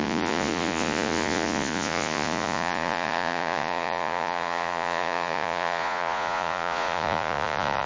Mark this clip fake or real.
fake